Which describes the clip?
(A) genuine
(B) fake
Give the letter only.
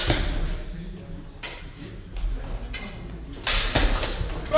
A